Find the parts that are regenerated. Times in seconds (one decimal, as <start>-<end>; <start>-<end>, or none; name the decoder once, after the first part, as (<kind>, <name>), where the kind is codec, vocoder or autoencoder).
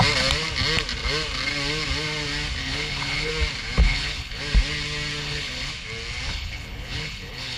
2.6-3.3 (codec, HILCodec); 3.8-4.4; 5.2-5.7; 6.3-7.6